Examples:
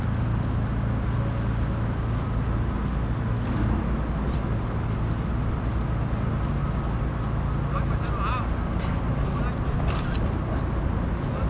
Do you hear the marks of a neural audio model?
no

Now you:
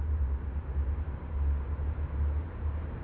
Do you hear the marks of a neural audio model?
no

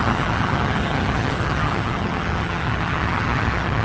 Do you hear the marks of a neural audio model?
yes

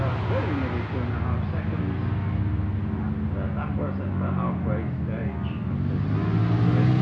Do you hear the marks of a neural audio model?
no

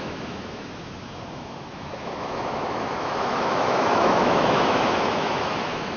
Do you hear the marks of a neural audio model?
yes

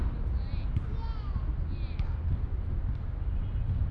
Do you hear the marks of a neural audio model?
no